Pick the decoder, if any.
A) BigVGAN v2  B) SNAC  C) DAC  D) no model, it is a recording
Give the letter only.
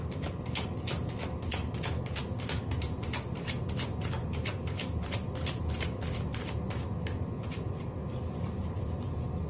D